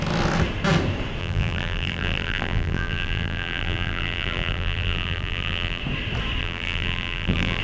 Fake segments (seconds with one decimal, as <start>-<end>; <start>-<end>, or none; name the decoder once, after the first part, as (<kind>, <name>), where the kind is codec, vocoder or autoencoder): 1.2-5.8 (vocoder, BigVGAN v2); 6.4-7.6

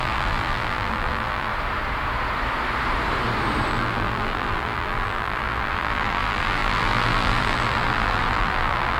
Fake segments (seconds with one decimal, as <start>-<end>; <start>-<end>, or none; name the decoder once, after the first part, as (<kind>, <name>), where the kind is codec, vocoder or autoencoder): 0.0-1.5 (vocoder, BigVGAN v2); 3.7-9.0

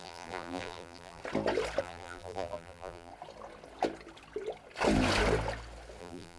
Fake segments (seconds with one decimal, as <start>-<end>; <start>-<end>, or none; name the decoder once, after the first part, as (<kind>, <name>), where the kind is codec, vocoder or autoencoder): 0.0-1.2 (vocoder, BigVGAN v2); 1.8-3.1; 6.0-6.4